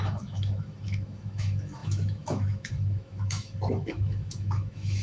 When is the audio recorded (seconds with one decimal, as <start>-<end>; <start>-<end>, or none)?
none